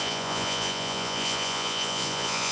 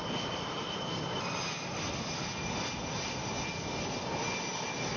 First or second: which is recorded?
second